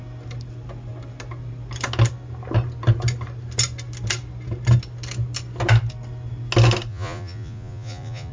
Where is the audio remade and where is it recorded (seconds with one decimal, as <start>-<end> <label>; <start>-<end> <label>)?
0.0-6.9 recorded; 6.9-8.3 remade